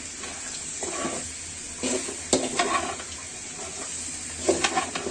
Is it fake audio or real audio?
real